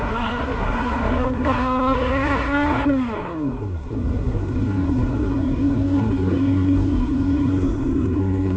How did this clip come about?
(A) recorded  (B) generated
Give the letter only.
B